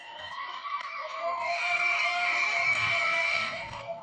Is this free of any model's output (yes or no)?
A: no